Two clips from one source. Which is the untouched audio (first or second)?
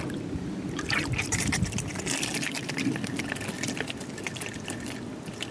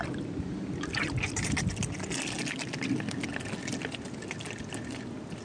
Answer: second